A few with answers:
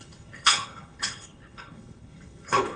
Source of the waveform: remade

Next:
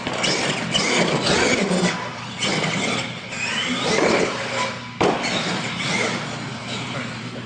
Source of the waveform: recorded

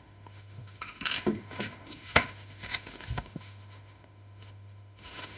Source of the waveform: remade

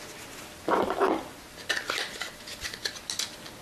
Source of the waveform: recorded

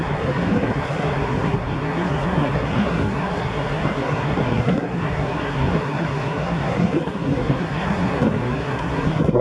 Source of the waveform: remade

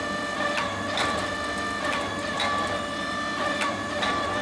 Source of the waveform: remade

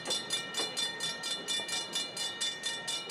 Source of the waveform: recorded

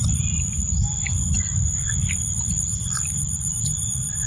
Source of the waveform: remade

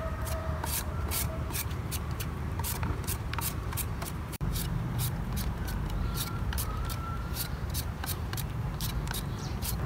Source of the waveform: remade